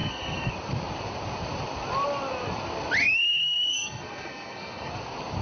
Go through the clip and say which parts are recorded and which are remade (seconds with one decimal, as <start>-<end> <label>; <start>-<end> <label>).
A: 0.0-0.5 remade; 0.5-3.0 recorded; 3.0-4.9 remade; 4.9-5.4 recorded